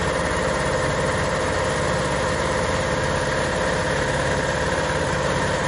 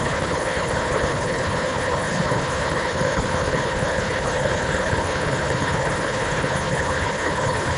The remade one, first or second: second